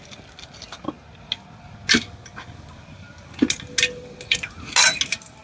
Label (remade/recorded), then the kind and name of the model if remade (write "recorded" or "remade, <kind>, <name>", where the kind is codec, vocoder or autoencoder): recorded